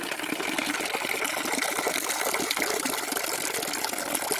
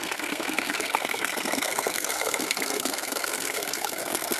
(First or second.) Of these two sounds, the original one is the first